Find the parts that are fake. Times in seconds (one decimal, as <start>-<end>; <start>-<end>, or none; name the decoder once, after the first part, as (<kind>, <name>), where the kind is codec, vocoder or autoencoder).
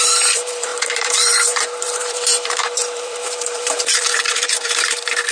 0.0-5.3 (vocoder, BigVGAN v2)